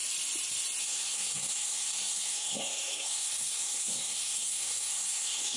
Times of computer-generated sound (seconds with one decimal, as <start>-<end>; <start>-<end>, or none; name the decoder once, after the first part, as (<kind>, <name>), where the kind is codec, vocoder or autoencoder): 0.8-5.6 (codec, SNAC)